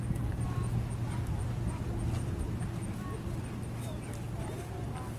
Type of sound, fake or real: real